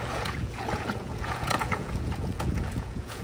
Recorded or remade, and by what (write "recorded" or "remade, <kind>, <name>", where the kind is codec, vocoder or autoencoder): remade, vocoder, Vocos